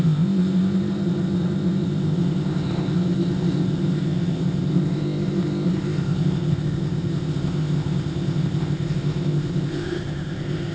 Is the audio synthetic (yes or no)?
yes